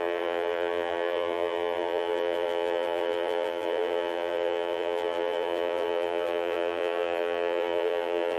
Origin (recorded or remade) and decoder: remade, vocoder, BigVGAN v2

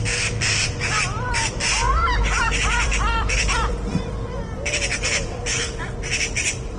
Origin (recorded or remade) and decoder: remade, vocoder, BigVGAN v2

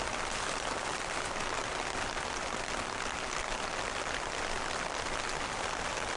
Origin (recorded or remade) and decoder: recorded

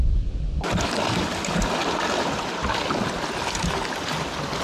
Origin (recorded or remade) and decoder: recorded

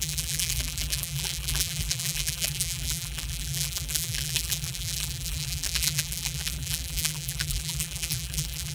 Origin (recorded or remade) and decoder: remade, vocoder, BigVGAN v2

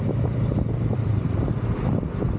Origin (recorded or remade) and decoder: remade, vocoder, BigVGAN v2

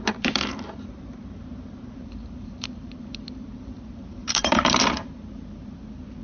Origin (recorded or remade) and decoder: remade, vocoder, BigVGAN v2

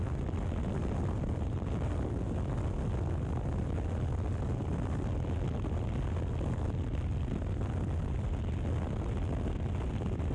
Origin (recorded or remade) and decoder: recorded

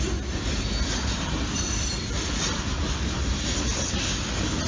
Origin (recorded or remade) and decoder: recorded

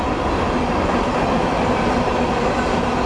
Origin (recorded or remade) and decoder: recorded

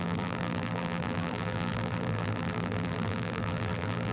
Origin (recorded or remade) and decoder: remade, vocoder, BigVGAN v2